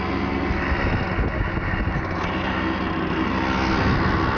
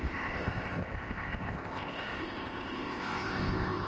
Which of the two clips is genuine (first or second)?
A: first